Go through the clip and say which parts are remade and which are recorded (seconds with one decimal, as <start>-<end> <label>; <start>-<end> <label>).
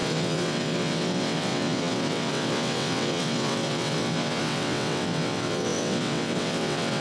0.0-7.0 remade